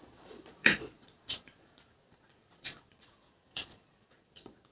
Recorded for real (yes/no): no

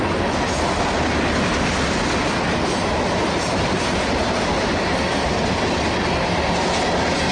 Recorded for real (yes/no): yes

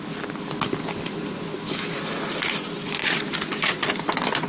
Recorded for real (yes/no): yes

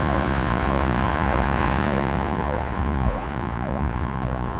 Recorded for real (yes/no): no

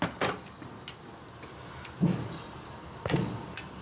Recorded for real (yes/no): yes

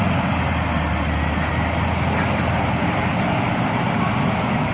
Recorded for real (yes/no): yes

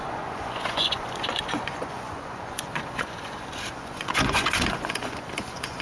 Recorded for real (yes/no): no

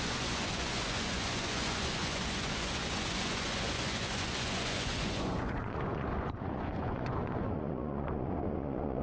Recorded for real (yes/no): no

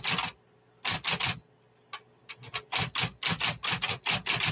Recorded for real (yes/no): yes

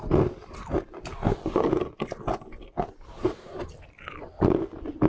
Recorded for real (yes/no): yes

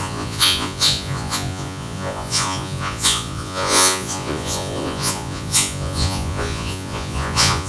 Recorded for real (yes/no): no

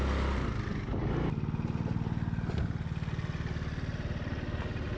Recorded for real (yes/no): yes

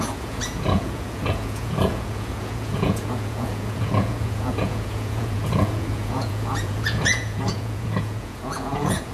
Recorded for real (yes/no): no